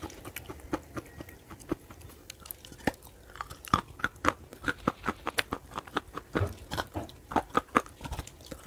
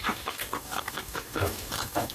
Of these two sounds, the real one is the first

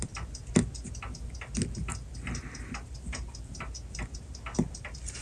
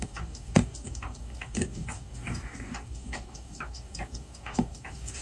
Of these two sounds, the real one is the first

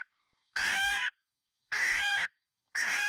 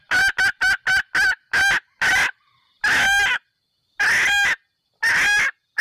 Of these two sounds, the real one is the second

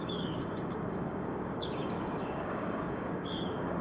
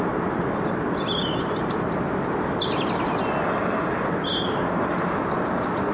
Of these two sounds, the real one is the second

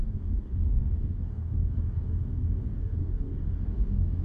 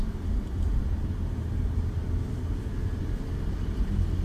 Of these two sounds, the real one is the second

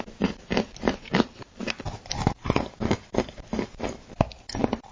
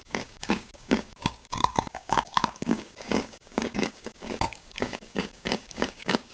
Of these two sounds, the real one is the first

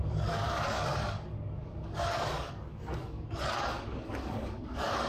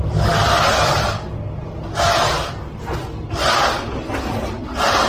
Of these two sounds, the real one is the second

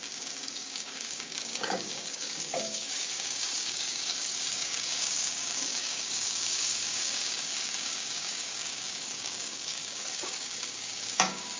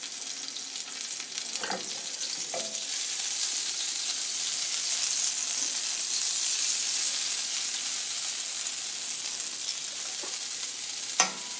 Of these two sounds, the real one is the second